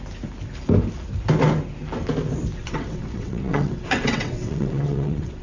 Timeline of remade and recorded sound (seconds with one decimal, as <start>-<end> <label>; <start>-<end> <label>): 0.0-2.6 recorded; 2.6-5.4 remade